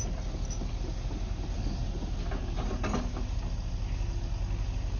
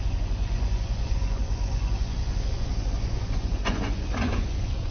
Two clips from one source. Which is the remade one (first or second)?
second